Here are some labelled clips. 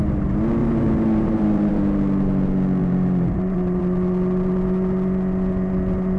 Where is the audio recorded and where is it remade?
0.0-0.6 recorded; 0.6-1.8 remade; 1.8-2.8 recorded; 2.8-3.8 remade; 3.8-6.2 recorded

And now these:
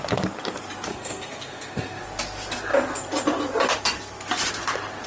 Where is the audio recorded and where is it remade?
0.0-0.9 recorded; 0.9-2.0 remade; 2.0-5.1 recorded

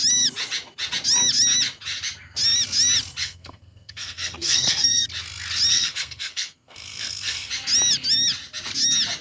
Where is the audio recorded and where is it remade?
0.0-3.2 recorded; 3.2-5.1 remade; 5.1-5.7 recorded; 5.7-7.5 remade; 7.5-9.2 recorded

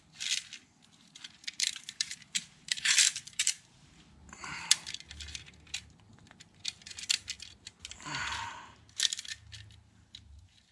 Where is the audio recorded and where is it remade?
0.0-0.6 recorded; 0.6-3.9 remade; 3.9-10.7 recorded